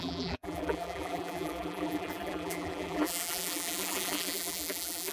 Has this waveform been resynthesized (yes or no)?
yes